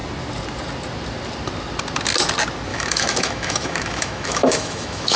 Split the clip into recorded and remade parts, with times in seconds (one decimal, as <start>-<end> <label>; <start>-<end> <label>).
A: 0.0-2.7 recorded; 2.7-5.2 remade